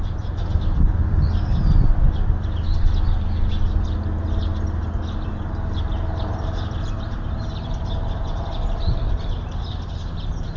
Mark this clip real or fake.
real